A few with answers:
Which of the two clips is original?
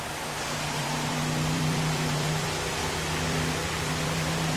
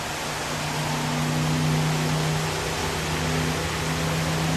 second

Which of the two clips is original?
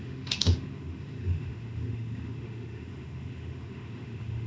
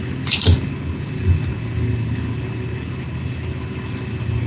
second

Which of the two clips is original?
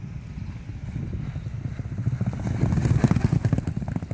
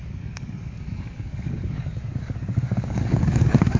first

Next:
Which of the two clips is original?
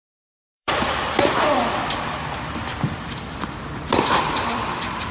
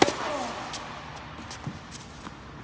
second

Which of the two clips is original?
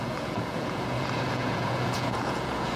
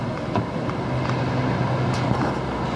second